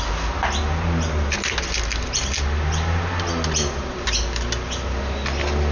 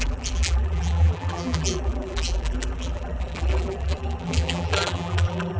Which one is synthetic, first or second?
second